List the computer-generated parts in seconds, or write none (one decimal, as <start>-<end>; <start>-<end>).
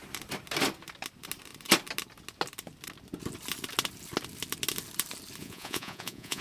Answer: 5.4-6.4